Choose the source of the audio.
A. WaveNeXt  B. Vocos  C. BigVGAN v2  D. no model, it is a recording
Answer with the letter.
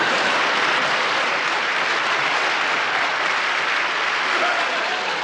D